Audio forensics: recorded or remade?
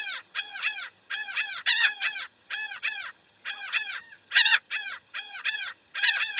remade